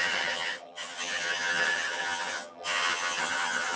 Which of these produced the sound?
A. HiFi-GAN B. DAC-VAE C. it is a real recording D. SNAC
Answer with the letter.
A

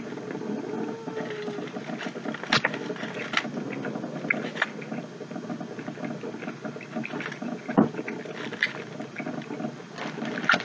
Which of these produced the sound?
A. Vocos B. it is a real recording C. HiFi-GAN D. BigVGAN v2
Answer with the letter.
B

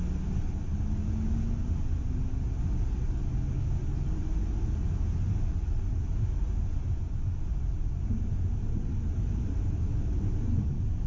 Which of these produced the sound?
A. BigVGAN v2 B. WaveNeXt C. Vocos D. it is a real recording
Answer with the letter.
D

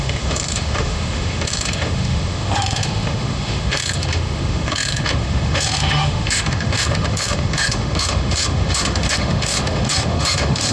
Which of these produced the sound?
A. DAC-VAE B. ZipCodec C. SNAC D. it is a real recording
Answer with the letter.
A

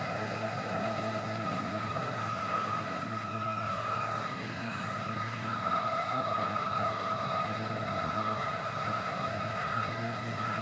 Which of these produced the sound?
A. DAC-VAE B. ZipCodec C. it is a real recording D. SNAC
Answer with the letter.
D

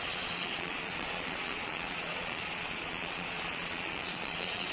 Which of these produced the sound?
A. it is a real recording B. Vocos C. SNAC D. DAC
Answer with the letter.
B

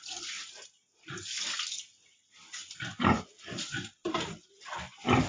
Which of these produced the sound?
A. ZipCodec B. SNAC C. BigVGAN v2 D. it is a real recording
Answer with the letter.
D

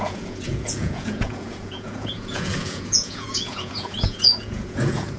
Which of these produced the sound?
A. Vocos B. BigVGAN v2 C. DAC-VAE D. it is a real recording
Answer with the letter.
A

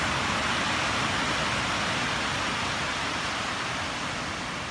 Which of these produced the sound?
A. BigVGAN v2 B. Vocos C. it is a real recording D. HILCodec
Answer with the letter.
C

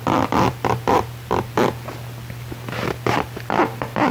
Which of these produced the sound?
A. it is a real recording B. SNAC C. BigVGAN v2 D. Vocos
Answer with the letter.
A